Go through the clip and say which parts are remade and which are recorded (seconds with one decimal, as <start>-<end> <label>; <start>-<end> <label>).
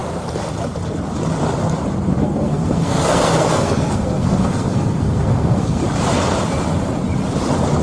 0.0-2.2 recorded; 2.2-5.8 remade; 5.8-7.8 recorded